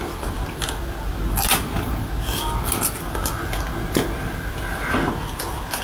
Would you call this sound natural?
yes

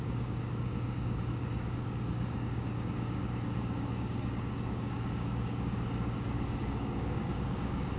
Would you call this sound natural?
no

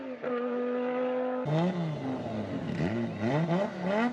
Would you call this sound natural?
yes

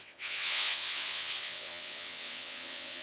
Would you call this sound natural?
no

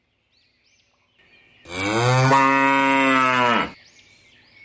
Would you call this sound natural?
yes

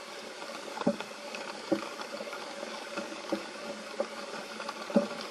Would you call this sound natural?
no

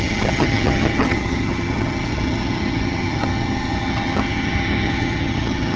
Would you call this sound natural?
no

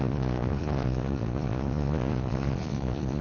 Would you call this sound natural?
no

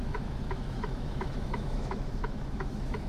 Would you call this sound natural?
no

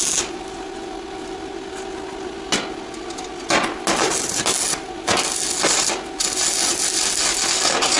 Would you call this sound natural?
yes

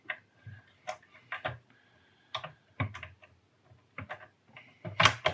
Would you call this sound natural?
yes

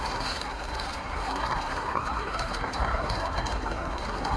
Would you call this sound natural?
no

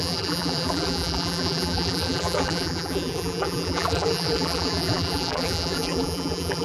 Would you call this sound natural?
no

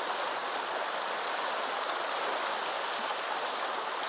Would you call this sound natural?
yes